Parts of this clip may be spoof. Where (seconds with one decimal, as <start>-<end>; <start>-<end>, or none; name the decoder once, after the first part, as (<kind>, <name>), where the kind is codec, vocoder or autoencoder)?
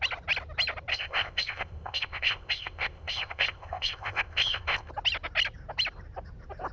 0.9-4.9 (codec, ZipCodec)